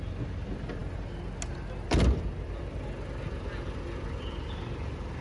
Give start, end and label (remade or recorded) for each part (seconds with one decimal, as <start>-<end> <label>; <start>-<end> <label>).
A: 0.0-5.2 recorded